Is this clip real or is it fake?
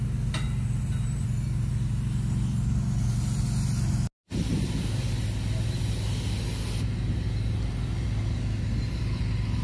real